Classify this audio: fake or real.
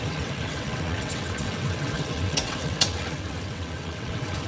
fake